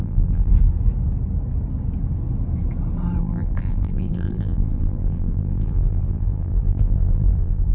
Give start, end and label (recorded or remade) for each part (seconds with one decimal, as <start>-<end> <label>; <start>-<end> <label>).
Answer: 0.0-0.5 remade; 0.5-3.2 recorded; 3.2-7.7 remade